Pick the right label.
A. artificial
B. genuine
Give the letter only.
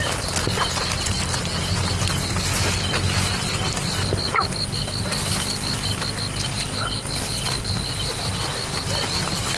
B